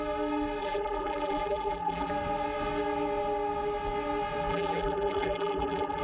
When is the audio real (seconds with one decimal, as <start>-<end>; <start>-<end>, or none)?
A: 0.0-0.6; 2.1-4.5